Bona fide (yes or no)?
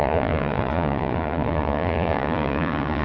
no